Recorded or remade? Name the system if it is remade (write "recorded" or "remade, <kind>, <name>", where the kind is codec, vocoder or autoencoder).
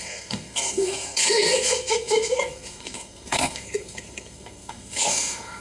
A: remade, codec, SNAC